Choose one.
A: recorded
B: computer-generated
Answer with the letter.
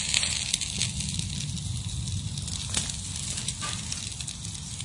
A